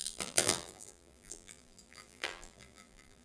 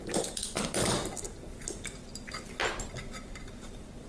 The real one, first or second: second